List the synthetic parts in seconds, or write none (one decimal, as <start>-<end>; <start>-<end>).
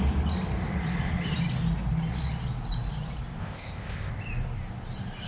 3.4-4.1